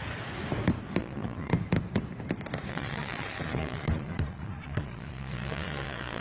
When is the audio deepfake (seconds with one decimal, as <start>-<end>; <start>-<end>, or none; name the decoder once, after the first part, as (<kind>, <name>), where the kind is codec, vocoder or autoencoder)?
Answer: 1.0-1.5 (vocoder, Vocos); 2.7-6.2